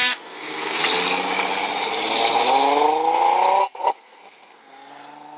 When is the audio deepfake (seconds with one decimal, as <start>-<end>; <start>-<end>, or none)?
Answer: 0.0-0.8; 3.6-4.9